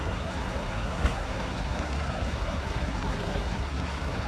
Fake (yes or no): yes